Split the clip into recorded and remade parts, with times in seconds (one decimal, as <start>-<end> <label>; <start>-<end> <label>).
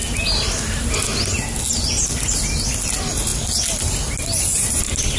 0.0-5.2 recorded